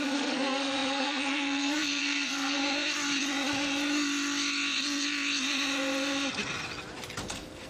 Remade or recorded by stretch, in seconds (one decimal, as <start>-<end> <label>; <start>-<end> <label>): 0.0-2.6 remade; 2.6-7.2 recorded; 7.2-7.7 remade